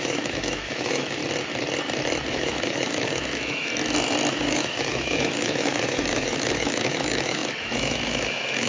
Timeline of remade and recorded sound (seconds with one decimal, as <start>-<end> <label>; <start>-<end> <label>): 0.0-1.2 remade; 1.2-2.3 recorded; 2.3-3.7 remade; 3.7-4.3 recorded; 4.3-8.7 remade